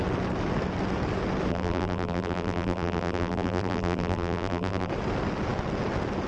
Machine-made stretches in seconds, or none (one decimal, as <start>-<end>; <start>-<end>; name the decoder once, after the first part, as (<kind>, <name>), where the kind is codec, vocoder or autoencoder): 1.5-4.9 (vocoder, BigVGAN v2)